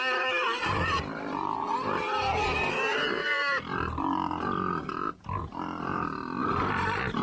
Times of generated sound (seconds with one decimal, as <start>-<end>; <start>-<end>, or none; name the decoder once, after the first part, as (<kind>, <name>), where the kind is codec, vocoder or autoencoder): none